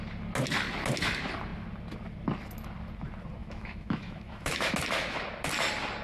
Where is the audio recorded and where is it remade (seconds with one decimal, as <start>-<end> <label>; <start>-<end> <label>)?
0.0-3.4 recorded; 3.4-4.7 remade; 4.7-6.0 recorded